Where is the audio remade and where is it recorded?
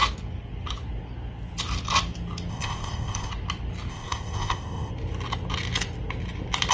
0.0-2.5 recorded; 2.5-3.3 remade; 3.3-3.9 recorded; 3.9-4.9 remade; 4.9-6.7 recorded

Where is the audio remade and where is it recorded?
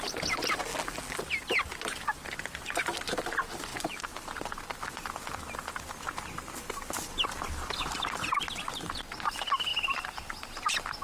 0.0-0.7 recorded; 0.7-1.2 remade; 1.2-11.0 recorded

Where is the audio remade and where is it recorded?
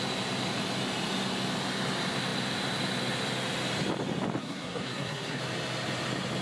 0.0-4.4 recorded; 4.4-5.4 remade; 5.4-6.4 recorded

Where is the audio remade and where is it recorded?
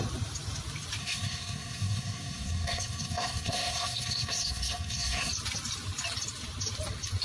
0.0-1.0 recorded; 1.0-5.3 remade; 5.3-7.2 recorded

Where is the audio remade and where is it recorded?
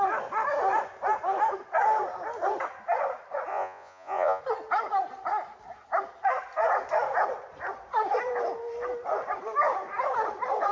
0.0-3.5 recorded; 3.5-4.4 remade; 4.4-10.7 recorded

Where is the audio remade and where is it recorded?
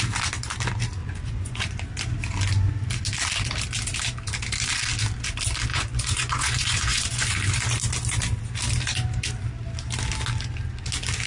0.0-1.0 recorded; 1.0-1.6 remade; 1.6-5.7 recorded; 5.7-7.3 remade; 7.3-11.3 recorded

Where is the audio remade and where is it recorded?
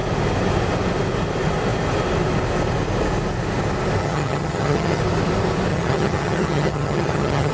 0.0-4.0 recorded; 4.0-5.0 remade; 5.0-5.7 recorded; 5.7-7.5 remade